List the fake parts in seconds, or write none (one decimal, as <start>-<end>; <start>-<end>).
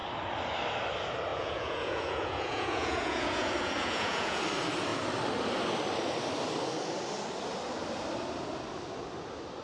1.3-4.4